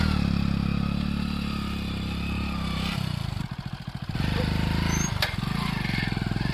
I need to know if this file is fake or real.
real